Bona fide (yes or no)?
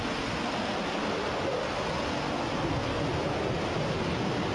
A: yes